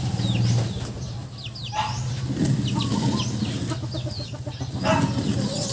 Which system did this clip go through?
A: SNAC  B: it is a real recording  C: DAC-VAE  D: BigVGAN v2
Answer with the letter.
B